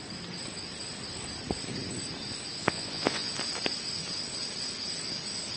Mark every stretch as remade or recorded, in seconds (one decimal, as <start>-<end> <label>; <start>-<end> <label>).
0.0-2.6 recorded; 2.6-3.3 remade; 3.3-5.6 recorded